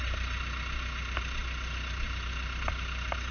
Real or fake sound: real